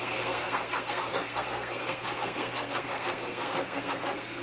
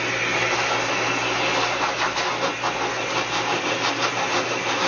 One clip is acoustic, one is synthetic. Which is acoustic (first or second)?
second